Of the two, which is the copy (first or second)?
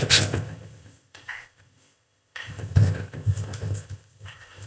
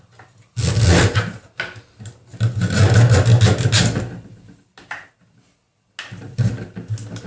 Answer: first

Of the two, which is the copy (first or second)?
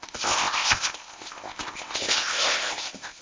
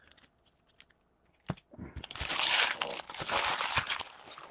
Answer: first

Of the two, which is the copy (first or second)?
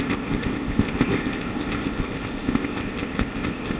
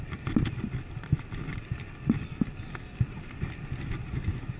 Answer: first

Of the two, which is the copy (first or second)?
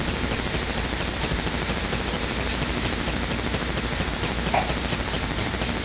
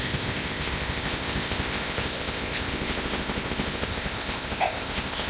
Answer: second